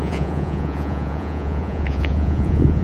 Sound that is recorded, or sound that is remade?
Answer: remade